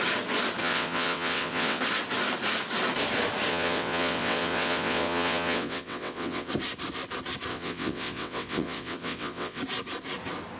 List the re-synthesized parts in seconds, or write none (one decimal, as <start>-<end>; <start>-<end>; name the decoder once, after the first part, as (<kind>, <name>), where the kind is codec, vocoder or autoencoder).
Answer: 0.6-1.8 (vocoder, WaveNeXt); 3.5-6.5; 7.5-9.6